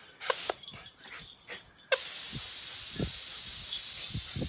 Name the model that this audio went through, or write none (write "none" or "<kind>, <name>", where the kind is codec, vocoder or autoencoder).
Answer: none